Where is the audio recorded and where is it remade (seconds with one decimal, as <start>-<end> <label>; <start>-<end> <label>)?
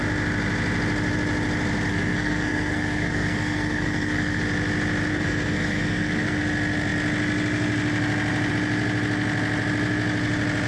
0.0-1.9 recorded; 1.9-4.4 remade; 4.4-5.1 recorded; 5.1-6.4 remade; 6.4-10.7 recorded